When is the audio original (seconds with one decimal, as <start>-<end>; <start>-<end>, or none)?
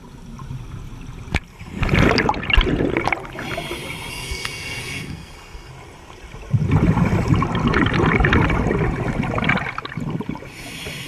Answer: 0.0-4.1; 5.7-11.1